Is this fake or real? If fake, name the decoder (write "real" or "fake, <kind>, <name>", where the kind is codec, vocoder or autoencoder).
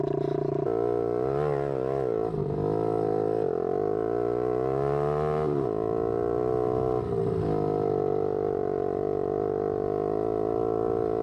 real